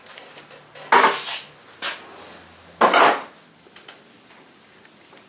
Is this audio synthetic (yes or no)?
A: no